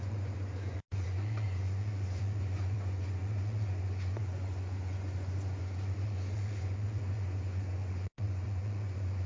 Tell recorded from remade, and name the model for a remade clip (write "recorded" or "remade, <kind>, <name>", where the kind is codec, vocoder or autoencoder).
remade, vocoder, Vocos